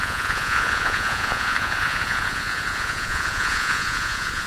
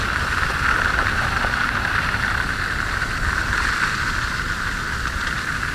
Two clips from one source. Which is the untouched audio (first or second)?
second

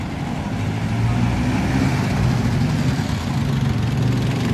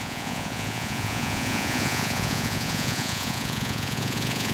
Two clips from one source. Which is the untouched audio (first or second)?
first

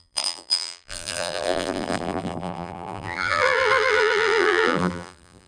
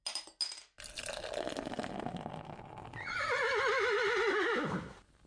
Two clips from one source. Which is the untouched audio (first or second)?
second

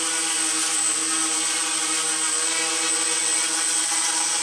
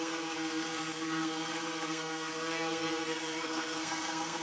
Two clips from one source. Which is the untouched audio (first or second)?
first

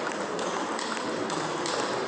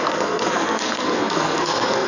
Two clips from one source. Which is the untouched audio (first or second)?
first